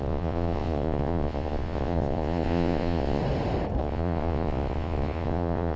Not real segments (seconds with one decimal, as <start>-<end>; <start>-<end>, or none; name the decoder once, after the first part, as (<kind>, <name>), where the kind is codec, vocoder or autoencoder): 0.0-3.2 (vocoder, Vocos); 3.8-5.8